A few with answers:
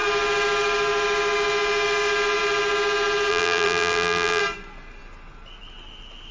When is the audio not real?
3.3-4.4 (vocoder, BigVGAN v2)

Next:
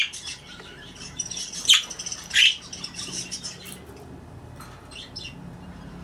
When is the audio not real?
0.0-6.0 (vocoder, BigVGAN v2)

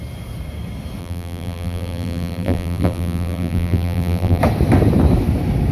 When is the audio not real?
1.0-4.4 (vocoder, BigVGAN v2)

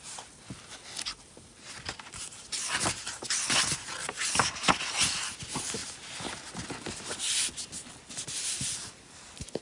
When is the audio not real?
none

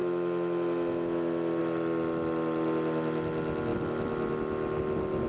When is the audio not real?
1.6-5.3 (vocoder, BigVGAN v2)

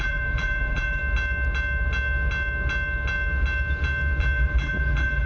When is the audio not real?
0.0-1.0 (vocoder, BigVGAN v2); 4.2-5.3

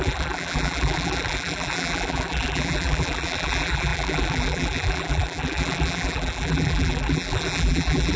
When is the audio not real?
0.0-8.2 (vocoder, BigVGAN v2)